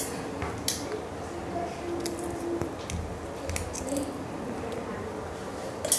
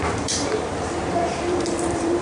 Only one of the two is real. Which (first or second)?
first